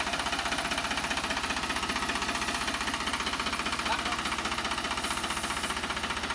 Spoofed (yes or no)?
no